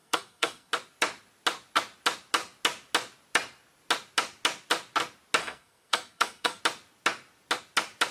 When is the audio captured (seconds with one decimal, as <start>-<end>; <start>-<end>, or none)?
0.7-5.4; 6.6-8.1